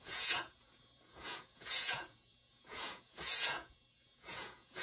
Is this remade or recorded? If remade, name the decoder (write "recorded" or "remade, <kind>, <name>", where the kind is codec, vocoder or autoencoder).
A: remade, vocoder, Vocos